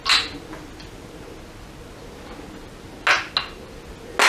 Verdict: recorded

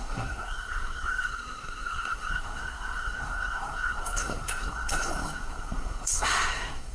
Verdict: remade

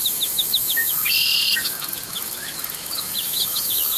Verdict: remade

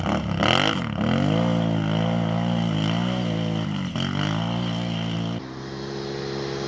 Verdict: recorded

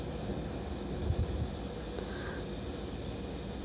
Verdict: recorded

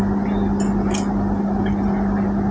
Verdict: recorded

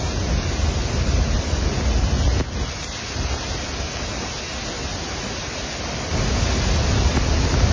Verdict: recorded